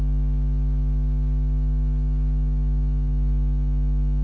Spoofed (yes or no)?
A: no